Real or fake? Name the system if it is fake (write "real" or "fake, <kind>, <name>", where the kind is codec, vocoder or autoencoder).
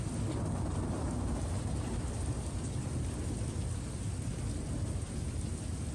real